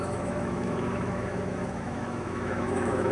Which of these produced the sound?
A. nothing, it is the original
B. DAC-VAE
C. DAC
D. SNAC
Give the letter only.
B